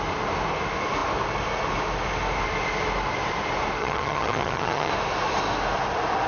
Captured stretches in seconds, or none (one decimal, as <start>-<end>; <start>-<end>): 0.0-3.8; 4.9-6.3